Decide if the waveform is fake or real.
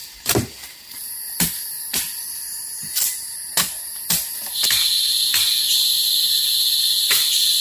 real